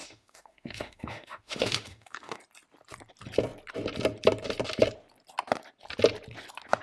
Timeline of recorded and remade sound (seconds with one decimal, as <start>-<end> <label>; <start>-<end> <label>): 0.0-2.4 remade; 2.4-6.8 recorded